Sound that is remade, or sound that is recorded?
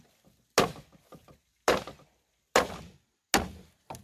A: recorded